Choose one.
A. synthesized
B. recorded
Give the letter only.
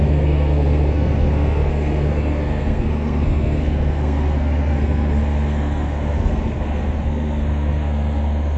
A